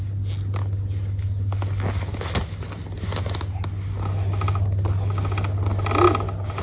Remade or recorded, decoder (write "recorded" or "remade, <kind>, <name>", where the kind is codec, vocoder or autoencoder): recorded